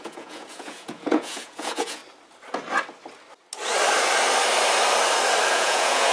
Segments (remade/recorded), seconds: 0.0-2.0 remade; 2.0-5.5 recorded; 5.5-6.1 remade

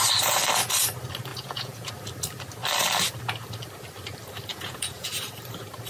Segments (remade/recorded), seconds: 0.0-1.3 recorded; 1.3-1.9 remade; 1.9-4.5 recorded; 4.5-5.1 remade; 5.1-5.9 recorded

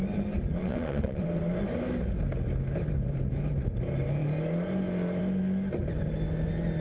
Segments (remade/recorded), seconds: 0.0-0.6 recorded; 0.6-1.2 remade; 1.2-6.8 recorded

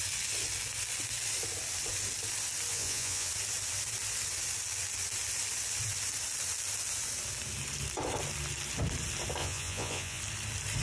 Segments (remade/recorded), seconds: 0.0-2.7 recorded; 2.7-3.3 remade; 3.3-9.4 recorded; 9.4-10.2 remade; 10.2-10.8 recorded

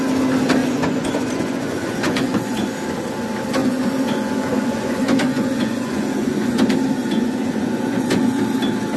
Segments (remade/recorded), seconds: 0.0-0.6 recorded; 0.6-2.7 remade; 2.7-3.6 recorded; 3.6-6.6 remade; 6.6-7.0 recorded; 7.0-8.4 remade; 8.4-9.0 recorded

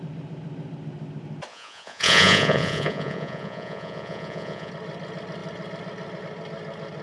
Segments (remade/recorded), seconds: 0.0-1.5 recorded; 1.5-4.7 remade; 4.7-7.0 recorded

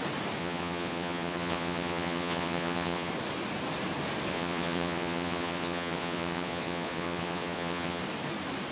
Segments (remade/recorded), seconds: 0.0-0.4 recorded; 0.4-3.1 remade; 3.1-4.3 recorded; 4.3-8.0 remade; 8.0-8.7 recorded

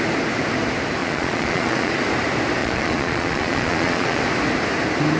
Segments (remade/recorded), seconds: 0.0-1.0 recorded; 1.0-1.9 remade; 1.9-2.6 recorded; 2.6-4.2 remade; 4.2-5.2 recorded